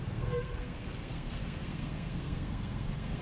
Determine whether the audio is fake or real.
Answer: fake